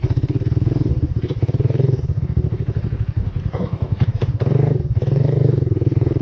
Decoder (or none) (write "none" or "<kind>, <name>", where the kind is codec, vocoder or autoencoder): codec, DAC